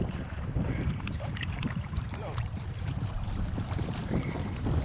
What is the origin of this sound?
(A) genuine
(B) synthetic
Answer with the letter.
B